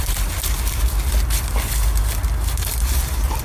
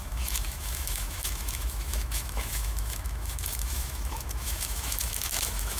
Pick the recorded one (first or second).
first